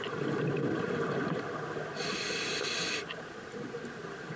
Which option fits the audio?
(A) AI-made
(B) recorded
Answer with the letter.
B